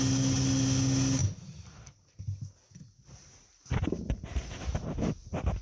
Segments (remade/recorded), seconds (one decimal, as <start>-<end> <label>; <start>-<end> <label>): 0.0-5.6 recorded